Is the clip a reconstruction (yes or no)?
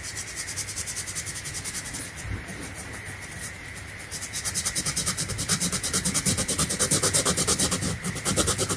no